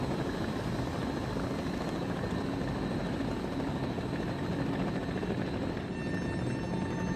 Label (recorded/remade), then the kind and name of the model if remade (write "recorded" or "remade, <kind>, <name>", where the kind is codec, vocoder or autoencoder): recorded